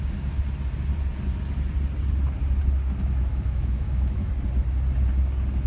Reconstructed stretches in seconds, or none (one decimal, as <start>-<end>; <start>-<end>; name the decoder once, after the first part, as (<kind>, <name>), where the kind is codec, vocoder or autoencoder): 3.3-4.3 (autoencoder, DAC-VAE)